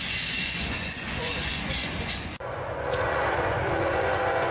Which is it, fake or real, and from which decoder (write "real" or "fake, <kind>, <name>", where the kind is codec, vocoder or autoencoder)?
fake, vocoder, Vocos